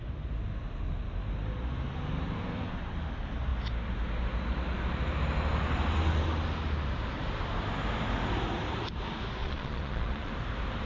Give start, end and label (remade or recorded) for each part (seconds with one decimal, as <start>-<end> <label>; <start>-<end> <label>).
0.0-9.4 recorded; 9.4-10.3 remade; 10.3-10.9 recorded